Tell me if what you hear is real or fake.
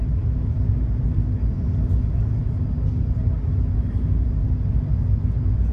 real